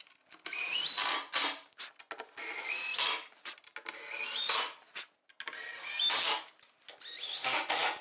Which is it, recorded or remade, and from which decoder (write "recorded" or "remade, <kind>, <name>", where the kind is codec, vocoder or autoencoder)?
recorded